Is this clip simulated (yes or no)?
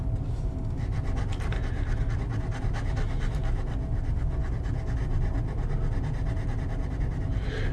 no